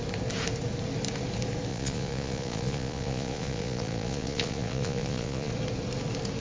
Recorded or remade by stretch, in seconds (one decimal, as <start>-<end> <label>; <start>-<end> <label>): 0.0-1.7 recorded; 1.7-5.5 remade; 5.5-6.4 recorded

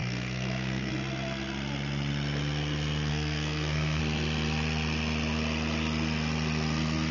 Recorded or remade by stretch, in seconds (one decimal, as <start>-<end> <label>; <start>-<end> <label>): 0.0-0.9 remade; 0.9-3.1 recorded; 3.1-4.0 remade; 4.0-7.1 recorded

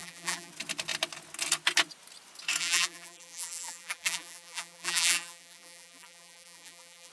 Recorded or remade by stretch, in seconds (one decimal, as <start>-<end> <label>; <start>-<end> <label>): 0.0-0.5 remade; 0.5-2.6 recorded; 2.6-7.1 remade

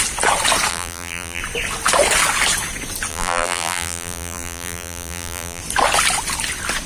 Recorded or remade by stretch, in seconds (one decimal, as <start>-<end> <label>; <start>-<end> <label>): 0.0-0.7 recorded; 0.7-1.4 remade; 1.4-3.1 recorded; 3.1-5.6 remade; 5.6-6.9 recorded

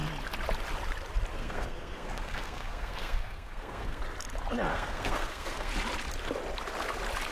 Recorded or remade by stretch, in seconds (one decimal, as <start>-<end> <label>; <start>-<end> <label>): 0.0-1.4 recorded; 1.4-4.0 remade; 4.0-4.7 recorded; 4.7-5.7 remade; 5.7-7.3 recorded